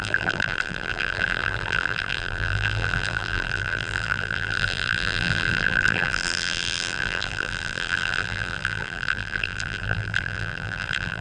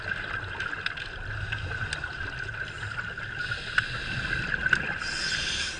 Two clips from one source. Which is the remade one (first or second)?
first